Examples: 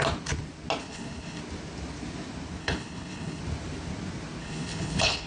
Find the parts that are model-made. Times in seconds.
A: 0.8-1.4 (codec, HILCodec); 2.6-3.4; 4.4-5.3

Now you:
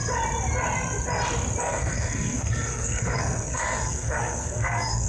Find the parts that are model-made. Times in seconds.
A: 1.6-5.1 (codec, SNAC)

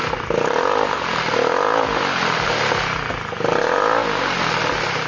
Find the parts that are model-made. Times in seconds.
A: 0.0-3.1 (vocoder, BigVGAN v2)

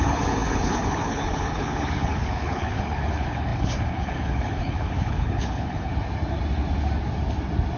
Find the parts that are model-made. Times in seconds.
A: 0.0-5.9 (codec, HILCodec)